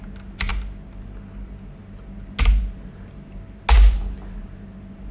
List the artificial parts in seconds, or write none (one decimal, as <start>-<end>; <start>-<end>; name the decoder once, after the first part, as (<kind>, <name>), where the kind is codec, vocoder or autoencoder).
none